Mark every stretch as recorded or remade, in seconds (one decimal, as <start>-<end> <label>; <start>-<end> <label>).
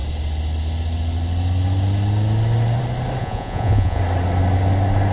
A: 0.0-3.2 recorded; 3.2-4.0 remade; 4.0-5.1 recorded